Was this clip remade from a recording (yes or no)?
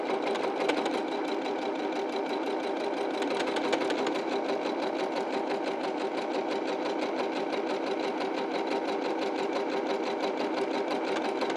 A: yes